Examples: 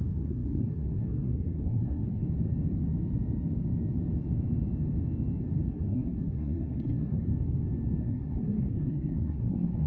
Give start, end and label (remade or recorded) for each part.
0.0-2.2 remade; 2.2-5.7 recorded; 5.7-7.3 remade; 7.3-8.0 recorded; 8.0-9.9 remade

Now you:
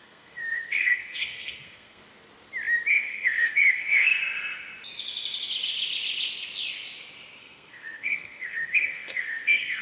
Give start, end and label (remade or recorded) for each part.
0.0-2.0 remade; 2.0-2.9 recorded; 2.9-4.2 remade; 4.2-7.4 recorded; 7.4-9.8 remade

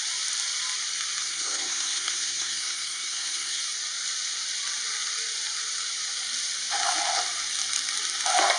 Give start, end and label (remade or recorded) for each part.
0.0-1.2 recorded; 1.2-3.6 remade; 3.6-8.6 recorded

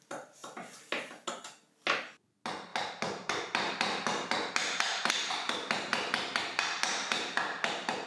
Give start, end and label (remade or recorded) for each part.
0.0-8.1 recorded

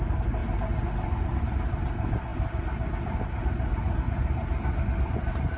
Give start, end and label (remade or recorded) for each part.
0.0-5.6 recorded

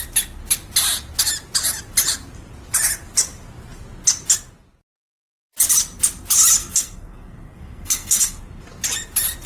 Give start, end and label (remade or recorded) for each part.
0.0-6.6 recorded; 6.6-8.4 remade; 8.4-9.5 recorded